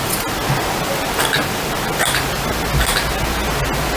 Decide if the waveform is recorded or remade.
recorded